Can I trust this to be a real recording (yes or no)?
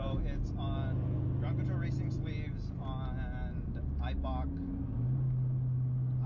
yes